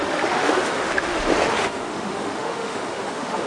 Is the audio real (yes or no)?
no